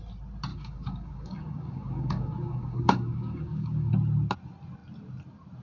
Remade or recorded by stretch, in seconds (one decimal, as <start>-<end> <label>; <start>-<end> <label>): 0.0-0.5 recorded; 0.5-3.9 remade; 3.9-5.6 recorded